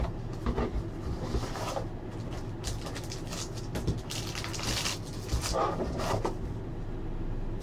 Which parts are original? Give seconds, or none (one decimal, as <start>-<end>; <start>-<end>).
0.0-7.6